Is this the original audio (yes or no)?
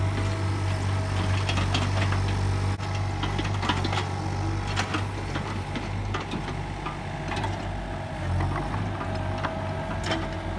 yes